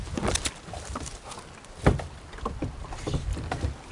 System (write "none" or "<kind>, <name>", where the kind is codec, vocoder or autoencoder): none